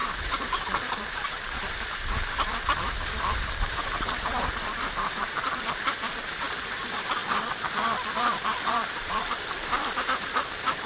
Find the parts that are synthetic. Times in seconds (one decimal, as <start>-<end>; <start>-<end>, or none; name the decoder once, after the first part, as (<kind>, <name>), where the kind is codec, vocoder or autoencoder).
0.0-7.2 (vocoder, BigVGAN v2); 8.3-10.9

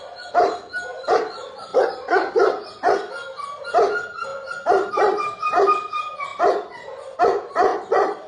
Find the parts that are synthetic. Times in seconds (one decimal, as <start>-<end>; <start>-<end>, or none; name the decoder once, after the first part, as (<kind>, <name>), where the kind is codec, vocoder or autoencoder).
7.7-8.3 (vocoder, BigVGAN v2)

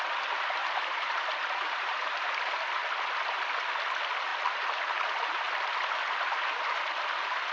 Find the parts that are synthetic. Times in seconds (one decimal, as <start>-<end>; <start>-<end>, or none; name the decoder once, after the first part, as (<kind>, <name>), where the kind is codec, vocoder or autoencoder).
0.6-2.1 (vocoder, BigVGAN v2)